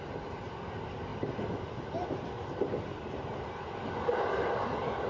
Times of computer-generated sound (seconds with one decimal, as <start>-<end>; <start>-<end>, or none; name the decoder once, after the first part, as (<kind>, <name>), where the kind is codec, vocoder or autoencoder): none